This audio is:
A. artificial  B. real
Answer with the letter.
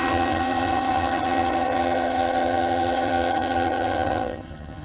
A